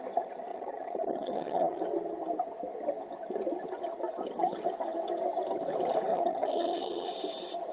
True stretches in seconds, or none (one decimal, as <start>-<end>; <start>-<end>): 0.0-0.5; 1.8-6.1; 7.1-7.7